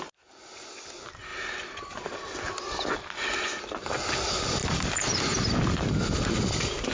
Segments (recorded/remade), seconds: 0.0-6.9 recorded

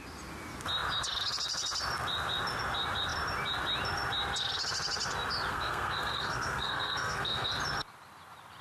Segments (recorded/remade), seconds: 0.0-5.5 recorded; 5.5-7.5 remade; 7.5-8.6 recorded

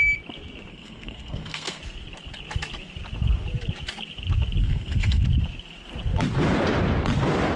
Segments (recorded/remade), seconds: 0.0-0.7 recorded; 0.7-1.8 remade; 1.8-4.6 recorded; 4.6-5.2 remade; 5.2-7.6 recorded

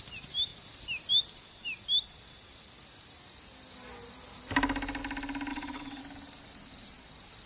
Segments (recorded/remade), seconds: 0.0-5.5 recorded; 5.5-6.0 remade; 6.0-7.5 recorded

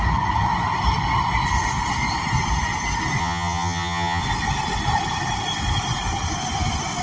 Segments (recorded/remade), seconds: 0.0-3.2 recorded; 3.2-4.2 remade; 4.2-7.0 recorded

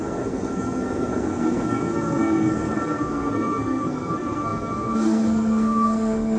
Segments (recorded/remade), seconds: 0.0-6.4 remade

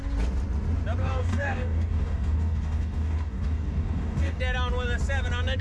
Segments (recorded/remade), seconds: 0.0-1.0 recorded; 1.0-4.4 remade; 4.4-5.6 recorded